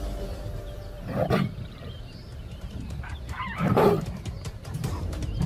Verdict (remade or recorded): remade